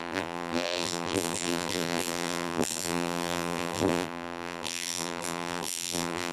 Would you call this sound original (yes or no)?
no